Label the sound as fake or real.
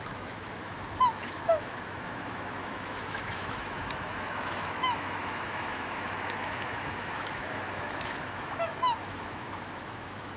fake